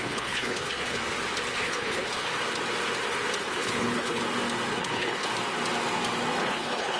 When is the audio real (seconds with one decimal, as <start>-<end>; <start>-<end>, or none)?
1.0-1.5; 2.3-3.5; 4.2-4.8; 5.3-6.4